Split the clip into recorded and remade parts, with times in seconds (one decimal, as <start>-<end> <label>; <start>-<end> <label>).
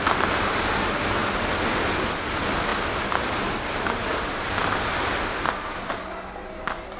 0.0-7.0 recorded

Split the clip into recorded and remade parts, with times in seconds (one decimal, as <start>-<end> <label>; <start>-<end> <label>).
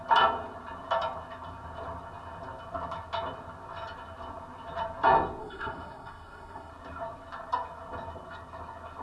0.0-5.4 recorded; 5.4-6.7 remade; 6.7-9.0 recorded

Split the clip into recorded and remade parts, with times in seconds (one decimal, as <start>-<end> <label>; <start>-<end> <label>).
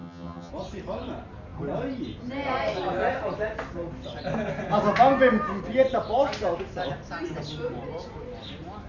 0.0-0.5 remade; 0.5-8.9 recorded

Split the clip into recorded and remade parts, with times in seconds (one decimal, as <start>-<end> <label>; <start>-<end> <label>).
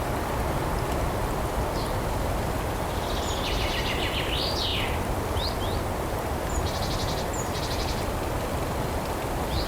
0.0-9.7 recorded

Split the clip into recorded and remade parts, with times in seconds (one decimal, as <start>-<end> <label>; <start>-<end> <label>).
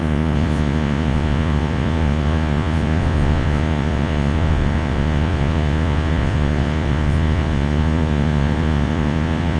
0.0-9.6 remade